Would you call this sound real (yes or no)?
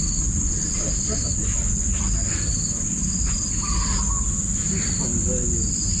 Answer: yes